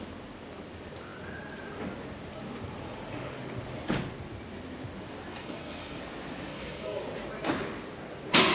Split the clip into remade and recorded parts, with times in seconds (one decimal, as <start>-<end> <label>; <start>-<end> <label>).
0.0-5.3 recorded; 5.3-6.0 remade; 6.0-6.5 recorded; 6.5-7.0 remade; 7.0-8.5 recorded